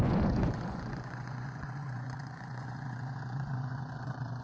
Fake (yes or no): yes